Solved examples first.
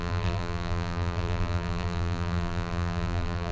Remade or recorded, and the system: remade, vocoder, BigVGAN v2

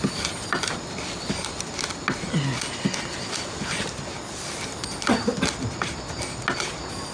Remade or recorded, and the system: recorded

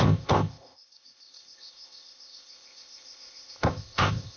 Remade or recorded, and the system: remade, codec, ZipCodec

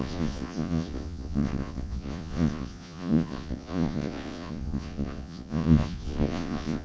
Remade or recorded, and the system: remade, vocoder, Vocos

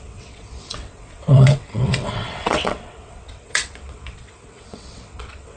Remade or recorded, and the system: remade, vocoder, WaveNeXt